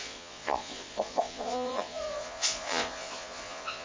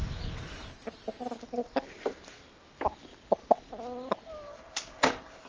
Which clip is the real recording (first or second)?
second